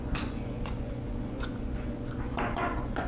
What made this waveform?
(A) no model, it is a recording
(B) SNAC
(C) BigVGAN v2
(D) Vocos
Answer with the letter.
D